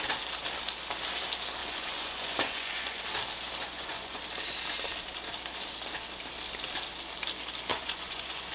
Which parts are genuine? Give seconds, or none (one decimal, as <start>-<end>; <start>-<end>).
0.0-1.6; 3.0-3.6; 4.2-7.7